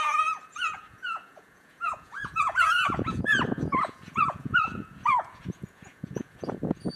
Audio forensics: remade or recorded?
remade